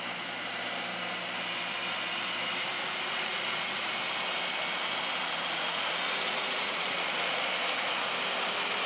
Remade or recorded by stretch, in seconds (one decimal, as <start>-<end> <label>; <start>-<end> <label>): 0.0-2.8 recorded; 2.8-3.9 remade; 3.9-5.2 recorded; 5.2-7.4 remade; 7.4-8.9 recorded